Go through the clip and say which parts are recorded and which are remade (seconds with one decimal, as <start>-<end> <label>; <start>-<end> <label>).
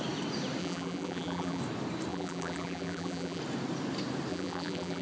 0.0-0.6 recorded; 0.6-1.6 remade; 1.6-2.1 recorded; 2.1-3.4 remade; 3.4-4.3 recorded; 4.3-5.0 remade